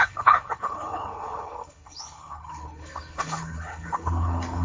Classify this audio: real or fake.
fake